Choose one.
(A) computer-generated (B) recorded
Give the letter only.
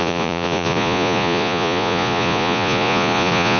A